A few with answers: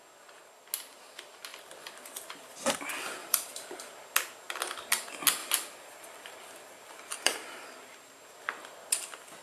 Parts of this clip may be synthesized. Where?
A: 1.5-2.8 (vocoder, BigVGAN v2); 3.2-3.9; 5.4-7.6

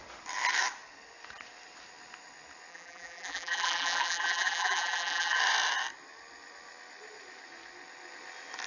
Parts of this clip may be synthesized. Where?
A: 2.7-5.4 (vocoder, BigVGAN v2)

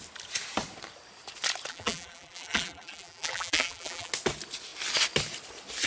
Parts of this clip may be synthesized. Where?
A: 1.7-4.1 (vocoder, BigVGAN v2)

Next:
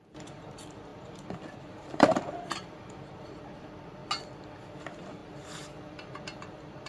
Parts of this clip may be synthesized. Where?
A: 0.0-4.0 (vocoder, BigVGAN v2); 4.7-6.9